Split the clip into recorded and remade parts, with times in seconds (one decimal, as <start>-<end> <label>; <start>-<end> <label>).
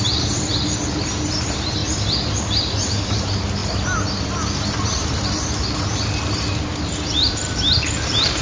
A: 0.0-1.8 remade; 1.8-2.4 recorded; 2.4-8.4 remade